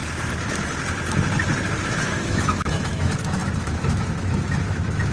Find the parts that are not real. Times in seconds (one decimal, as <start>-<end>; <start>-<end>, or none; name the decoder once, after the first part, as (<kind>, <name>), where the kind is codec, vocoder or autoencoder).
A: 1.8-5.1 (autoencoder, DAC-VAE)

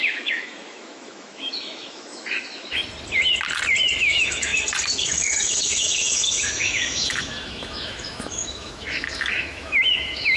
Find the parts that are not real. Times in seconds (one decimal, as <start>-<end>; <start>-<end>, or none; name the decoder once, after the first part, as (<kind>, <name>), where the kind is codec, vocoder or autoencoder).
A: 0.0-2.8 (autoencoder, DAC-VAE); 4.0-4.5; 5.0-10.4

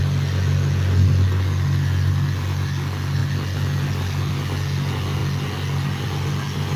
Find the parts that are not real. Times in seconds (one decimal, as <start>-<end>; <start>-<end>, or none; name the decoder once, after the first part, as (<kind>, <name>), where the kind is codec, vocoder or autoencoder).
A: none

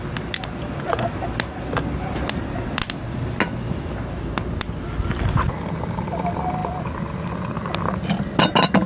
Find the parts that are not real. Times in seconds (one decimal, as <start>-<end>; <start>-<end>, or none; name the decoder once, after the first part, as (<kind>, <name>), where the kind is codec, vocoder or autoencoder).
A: none

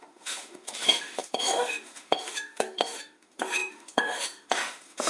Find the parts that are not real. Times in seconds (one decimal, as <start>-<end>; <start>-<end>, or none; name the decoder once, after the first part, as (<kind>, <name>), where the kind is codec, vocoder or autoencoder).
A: 0.0-5.1 (autoencoder, DAC-VAE)

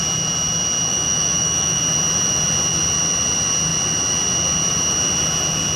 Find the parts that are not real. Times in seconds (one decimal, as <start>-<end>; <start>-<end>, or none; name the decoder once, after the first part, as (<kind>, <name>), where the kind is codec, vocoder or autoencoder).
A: 0.9-1.8 (autoencoder, DAC-VAE)